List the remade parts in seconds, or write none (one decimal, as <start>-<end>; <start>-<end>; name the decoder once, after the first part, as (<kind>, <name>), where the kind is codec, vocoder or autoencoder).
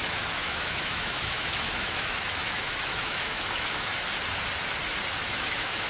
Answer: 0.0-3.9 (autoencoder, DAC-VAE); 5.2-5.9